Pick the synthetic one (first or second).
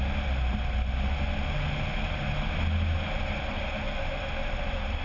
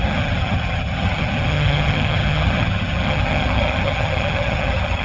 second